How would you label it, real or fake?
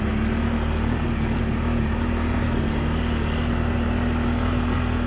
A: real